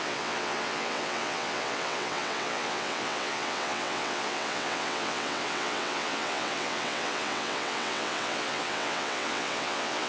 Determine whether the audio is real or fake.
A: fake